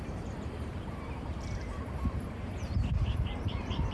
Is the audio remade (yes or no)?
yes